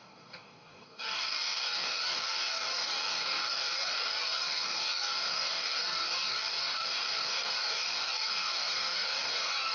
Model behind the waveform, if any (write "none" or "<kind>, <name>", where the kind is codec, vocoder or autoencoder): codec, DAC